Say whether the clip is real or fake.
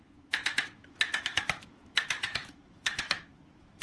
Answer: fake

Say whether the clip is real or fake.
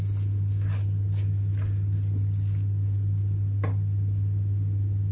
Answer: real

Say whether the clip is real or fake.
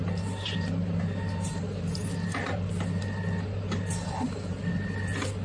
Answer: real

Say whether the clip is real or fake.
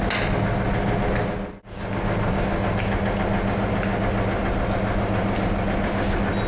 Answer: real